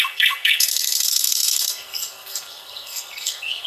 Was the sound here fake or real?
fake